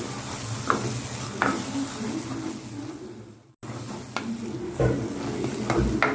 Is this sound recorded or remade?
recorded